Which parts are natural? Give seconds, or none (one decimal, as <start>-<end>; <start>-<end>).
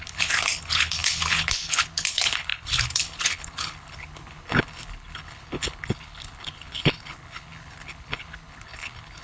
none